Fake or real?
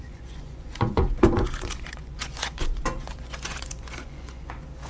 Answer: fake